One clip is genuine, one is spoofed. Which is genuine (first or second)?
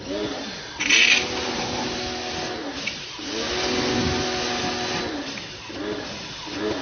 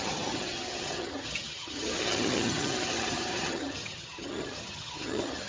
first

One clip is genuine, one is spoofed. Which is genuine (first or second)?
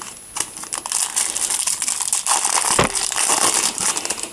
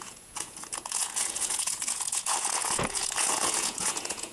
first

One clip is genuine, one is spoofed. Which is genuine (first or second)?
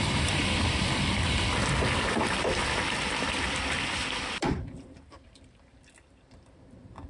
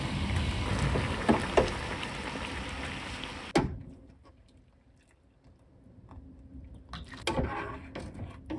second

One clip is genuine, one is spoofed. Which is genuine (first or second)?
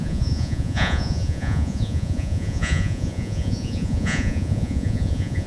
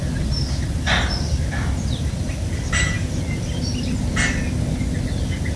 second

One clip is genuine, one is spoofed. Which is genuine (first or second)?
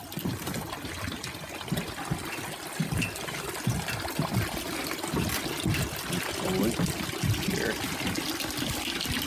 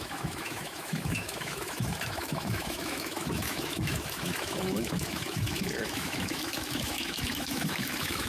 first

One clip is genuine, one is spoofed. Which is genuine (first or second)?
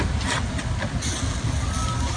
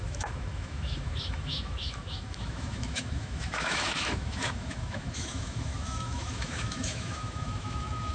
first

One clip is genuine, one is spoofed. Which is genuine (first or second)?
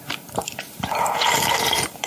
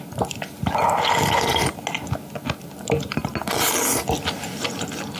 second